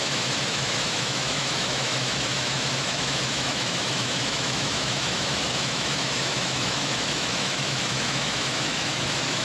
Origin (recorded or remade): remade